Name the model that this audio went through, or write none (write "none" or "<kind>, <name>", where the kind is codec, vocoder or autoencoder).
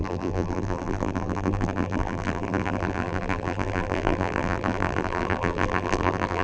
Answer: vocoder, BigVGAN v2